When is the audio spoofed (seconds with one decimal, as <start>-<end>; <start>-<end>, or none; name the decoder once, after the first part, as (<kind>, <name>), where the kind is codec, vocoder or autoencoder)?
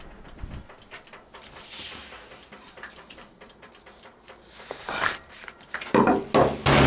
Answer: 2.0-6.1 (vocoder, BigVGAN v2)